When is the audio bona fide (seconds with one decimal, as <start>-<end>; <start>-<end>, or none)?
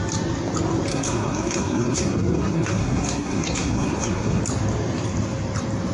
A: 0.0-0.9; 4.4-5.9